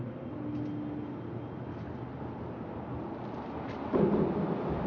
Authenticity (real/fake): real